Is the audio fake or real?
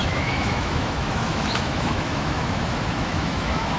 fake